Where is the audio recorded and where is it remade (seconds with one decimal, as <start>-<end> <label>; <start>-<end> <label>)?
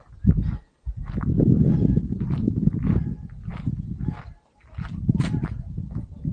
0.0-6.3 recorded